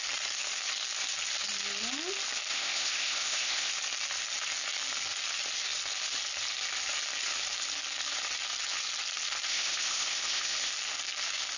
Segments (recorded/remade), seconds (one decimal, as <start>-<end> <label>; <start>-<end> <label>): 0.0-2.5 recorded; 2.5-3.7 remade; 3.7-9.5 recorded; 9.5-10.7 remade; 10.7-11.6 recorded